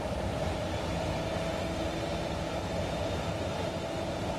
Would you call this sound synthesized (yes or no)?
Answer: yes